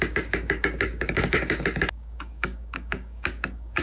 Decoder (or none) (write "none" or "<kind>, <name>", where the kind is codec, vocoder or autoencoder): codec, DAC